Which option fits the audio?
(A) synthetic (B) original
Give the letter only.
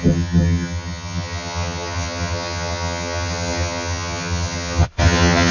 A